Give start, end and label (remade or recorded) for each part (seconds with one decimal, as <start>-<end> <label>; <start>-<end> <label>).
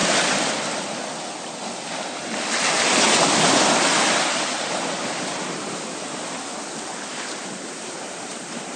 0.0-4.9 recorded; 4.9-6.5 remade; 6.5-7.1 recorded; 7.1-8.8 remade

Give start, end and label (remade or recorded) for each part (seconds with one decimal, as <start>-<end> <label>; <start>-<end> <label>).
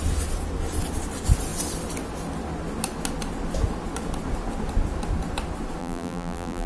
0.0-5.8 recorded; 5.8-6.7 remade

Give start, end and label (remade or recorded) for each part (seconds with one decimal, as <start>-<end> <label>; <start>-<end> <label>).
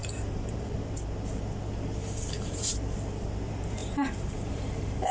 0.0-0.8 remade; 0.8-2.0 recorded; 2.0-2.7 remade; 2.7-3.8 recorded; 3.8-5.1 remade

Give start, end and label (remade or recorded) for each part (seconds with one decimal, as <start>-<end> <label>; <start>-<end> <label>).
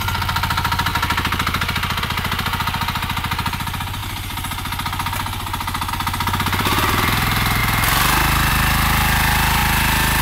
0.0-0.9 remade; 0.9-2.0 recorded; 2.0-4.0 remade; 4.0-5.9 recorded; 5.9-7.6 remade; 7.6-8.5 recorded; 8.5-9.6 remade; 9.6-10.2 recorded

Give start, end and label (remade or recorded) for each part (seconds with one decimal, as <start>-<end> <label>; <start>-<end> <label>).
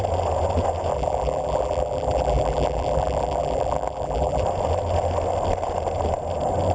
0.0-0.9 recorded; 0.9-4.4 remade; 4.4-6.7 recorded